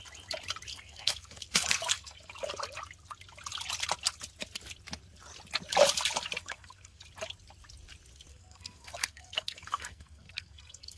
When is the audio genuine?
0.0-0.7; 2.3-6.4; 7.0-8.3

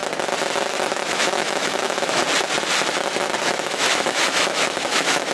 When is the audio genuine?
0.0-0.9; 2.2-3.5

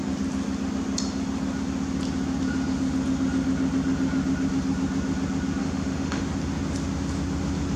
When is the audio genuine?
0.0-5.6; 6.2-7.8

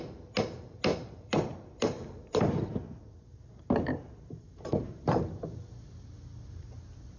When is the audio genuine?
0.0-0.9; 5.2-7.2

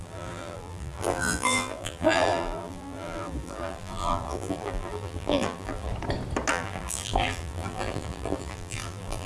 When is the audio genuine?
5.9-6.5

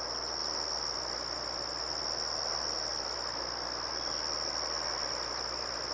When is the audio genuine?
0.0-5.9